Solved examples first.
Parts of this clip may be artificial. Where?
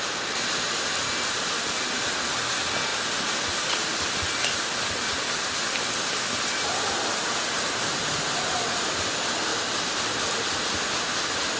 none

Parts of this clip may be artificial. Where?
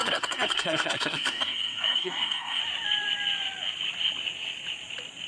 0.0-2.6 (codec, SNAC)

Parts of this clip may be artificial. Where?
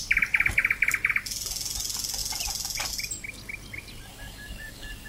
4.1-5.1 (codec, DAC)